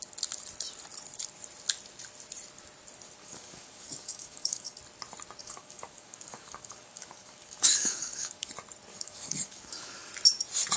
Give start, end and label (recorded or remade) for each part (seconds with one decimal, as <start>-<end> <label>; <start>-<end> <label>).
0.0-3.2 recorded; 3.2-4.8 remade; 4.8-5.4 recorded; 5.4-8.5 remade; 8.5-8.9 recorded; 8.9-10.1 remade; 10.1-10.8 recorded